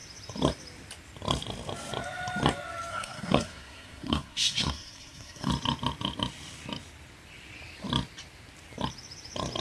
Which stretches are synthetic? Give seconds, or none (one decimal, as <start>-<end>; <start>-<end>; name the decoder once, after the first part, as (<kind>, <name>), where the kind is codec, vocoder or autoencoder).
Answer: 2.9-5.5 (codec, SNAC)